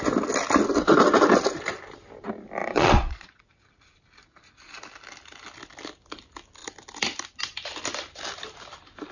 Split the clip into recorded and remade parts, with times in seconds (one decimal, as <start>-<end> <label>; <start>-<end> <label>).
0.0-2.6 recorded; 2.6-3.4 remade; 3.4-9.1 recorded